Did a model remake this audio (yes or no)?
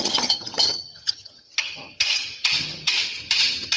yes